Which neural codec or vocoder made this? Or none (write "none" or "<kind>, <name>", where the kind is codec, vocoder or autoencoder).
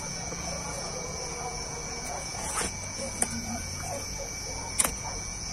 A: vocoder, Vocos